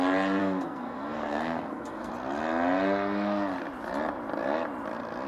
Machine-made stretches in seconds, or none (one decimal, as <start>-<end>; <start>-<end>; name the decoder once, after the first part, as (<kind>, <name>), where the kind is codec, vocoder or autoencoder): 0.4-2.1 (codec, SNAC)